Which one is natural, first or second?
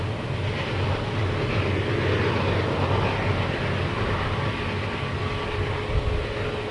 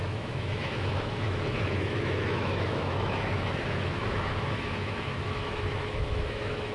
first